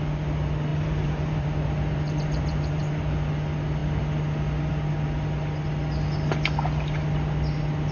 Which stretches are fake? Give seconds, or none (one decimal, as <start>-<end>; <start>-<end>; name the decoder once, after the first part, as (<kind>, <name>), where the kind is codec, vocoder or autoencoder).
0.7-3.0 (vocoder, BigVGAN v2)